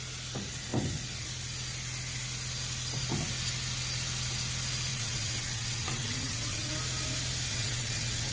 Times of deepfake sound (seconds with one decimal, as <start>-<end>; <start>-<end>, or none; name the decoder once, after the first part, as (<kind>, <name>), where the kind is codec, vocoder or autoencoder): 4.9-6.7 (vocoder, WaveNeXt); 7.5-8.3